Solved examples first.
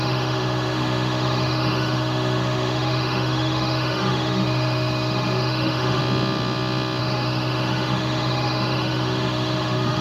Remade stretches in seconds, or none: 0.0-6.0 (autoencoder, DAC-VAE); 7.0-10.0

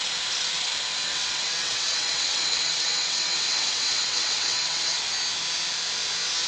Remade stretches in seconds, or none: 1.1-5.0 (vocoder, WaveNeXt)

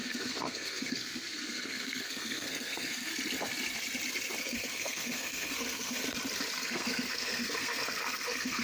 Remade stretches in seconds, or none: 0.0-3.1 (codec, SNAC); 4.4-6.0; 6.6-8.6

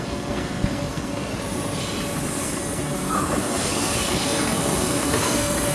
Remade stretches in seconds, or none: 0.0-1.3 (codec, SNAC); 2.4-5.7

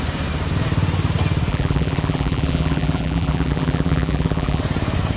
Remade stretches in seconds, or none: 1.5-4.6 (vocoder, BigVGAN v2)